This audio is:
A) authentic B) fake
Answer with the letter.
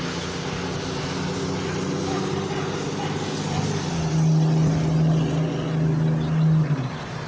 A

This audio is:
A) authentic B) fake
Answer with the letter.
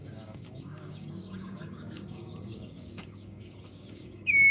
B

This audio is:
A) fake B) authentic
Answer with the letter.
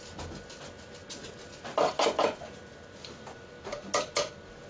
B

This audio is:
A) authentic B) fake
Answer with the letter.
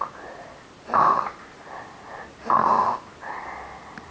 A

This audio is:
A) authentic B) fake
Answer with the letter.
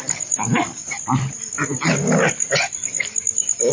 A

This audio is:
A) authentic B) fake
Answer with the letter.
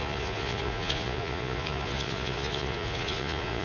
B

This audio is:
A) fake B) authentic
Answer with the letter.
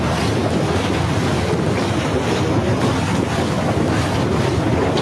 B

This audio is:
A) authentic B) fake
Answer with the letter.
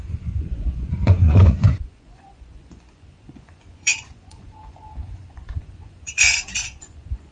B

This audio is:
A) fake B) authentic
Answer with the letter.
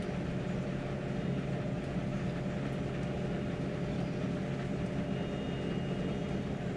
B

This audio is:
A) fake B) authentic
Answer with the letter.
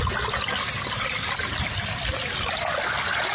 B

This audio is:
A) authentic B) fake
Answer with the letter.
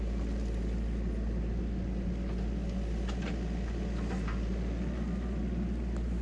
A